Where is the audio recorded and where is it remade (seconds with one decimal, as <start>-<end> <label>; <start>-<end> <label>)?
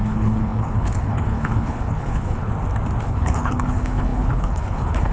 0.0-2.5 remade; 2.5-3.0 recorded; 3.0-5.1 remade